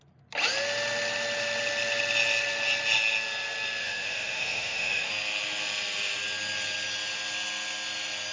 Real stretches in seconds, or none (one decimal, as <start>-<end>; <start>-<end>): 0.0-3.8; 5.1-8.3